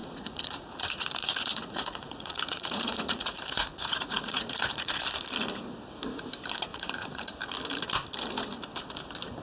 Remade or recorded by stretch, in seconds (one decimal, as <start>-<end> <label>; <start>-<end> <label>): 0.0-5.0 remade; 5.0-6.7 recorded; 6.7-7.3 remade; 7.3-9.4 recorded